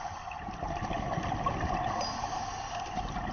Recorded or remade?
recorded